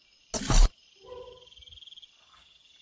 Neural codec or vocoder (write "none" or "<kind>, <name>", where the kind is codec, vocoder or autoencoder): none